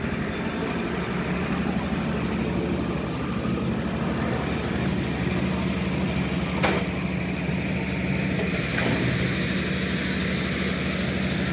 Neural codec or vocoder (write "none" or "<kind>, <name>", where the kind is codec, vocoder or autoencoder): none